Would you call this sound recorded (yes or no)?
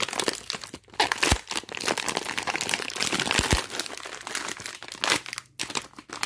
yes